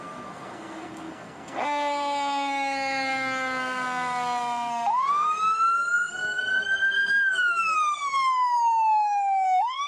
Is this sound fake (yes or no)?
yes